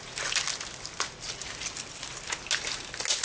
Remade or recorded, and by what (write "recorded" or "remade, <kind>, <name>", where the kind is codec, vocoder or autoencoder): recorded